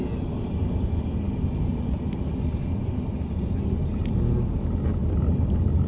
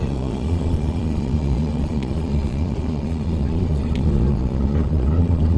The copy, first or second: second